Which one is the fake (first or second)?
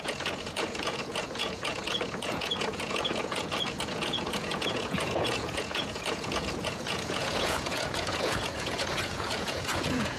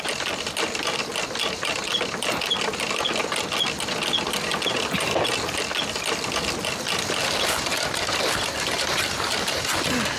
first